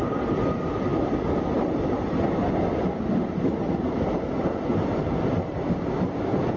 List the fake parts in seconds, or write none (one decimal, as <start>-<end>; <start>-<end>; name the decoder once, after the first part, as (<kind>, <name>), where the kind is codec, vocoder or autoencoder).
none

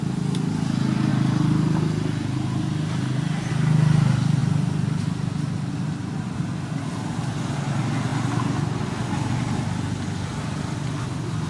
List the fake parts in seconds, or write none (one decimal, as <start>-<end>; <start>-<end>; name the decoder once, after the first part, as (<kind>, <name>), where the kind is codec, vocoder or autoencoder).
none

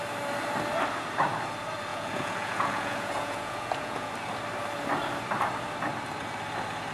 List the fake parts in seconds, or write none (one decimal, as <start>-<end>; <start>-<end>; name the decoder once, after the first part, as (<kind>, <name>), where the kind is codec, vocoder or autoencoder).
1.9-4.1 (vocoder, Vocos)

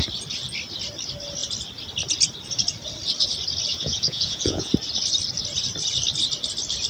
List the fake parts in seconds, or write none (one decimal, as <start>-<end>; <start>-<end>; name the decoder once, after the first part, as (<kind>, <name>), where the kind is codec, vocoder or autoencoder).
3.7-4.7 (vocoder, Vocos)

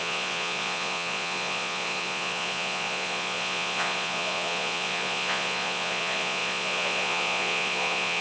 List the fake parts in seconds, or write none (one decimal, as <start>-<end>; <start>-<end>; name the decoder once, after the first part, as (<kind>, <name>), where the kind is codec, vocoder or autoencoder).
0.0-8.2 (vocoder, Vocos)

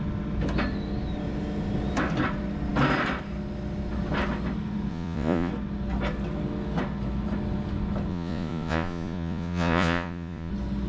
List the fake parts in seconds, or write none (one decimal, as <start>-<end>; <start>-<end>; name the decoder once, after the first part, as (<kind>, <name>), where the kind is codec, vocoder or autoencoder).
4.9-5.5 (vocoder, Vocos); 8.1-10.5

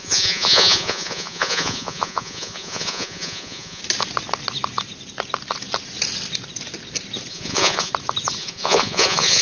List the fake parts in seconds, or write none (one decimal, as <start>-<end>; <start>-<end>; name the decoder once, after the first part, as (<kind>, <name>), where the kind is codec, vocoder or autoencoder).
0.0-3.8 (vocoder, Vocos); 7.3-7.9; 8.4-9.4

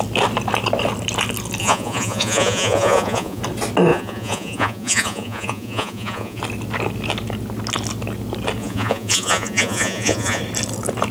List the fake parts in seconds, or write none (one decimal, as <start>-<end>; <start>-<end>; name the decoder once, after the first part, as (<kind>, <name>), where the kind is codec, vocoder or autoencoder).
1.6-3.4 (vocoder, Vocos); 3.9-6.4; 8.6-10.4